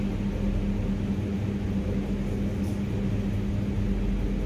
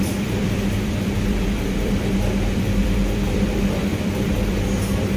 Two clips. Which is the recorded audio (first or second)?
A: first